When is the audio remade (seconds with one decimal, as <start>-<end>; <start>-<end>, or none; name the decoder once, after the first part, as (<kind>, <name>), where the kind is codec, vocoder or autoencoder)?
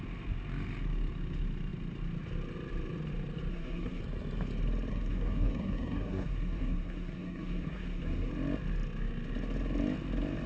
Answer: 3.5-4.0 (codec, SNAC); 4.9-8.3